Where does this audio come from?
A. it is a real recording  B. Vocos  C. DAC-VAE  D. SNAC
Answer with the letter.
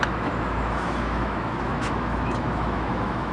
C